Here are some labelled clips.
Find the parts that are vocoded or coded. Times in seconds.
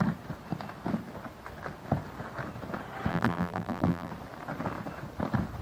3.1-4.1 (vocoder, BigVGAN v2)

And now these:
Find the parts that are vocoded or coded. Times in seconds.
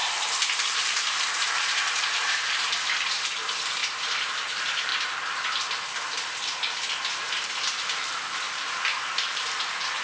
0.0-4.9 (vocoder, BigVGAN v2); 7.1-10.0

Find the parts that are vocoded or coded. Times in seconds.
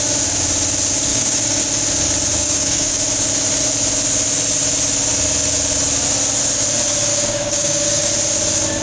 1.1-1.6 (codec, DAC); 2.3-3.0; 7.1-8.1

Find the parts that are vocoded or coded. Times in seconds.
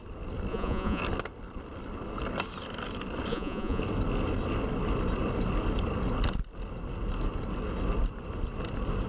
0.5-1.0 (vocoder, Vocos); 3.3-3.8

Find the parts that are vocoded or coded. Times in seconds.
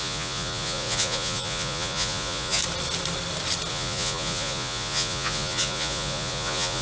0.0-2.6 (vocoder, Vocos); 3.7-6.8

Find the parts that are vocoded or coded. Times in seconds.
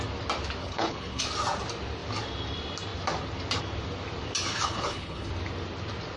0.6-1.2 (codec, HILCodec); 4.5-5.3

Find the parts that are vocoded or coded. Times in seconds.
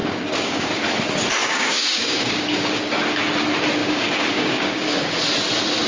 0.0-0.7 (codec, DAC); 1.4-2.8; 3.8-5.2